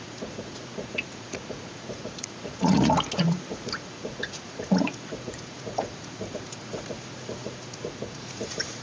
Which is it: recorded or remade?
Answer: remade